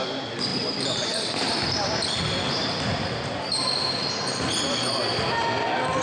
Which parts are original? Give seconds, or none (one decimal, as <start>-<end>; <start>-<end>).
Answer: 0.0-0.5; 4.1-6.0